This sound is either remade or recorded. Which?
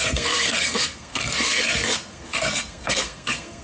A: remade